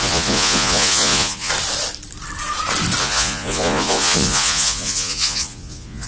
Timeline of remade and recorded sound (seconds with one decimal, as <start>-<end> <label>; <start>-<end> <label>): 0.0-1.5 remade; 1.5-3.0 recorded; 3.0-6.1 remade